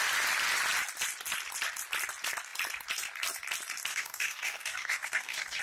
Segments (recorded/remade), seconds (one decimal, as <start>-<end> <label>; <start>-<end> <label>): 0.0-3.9 recorded; 3.9-5.6 remade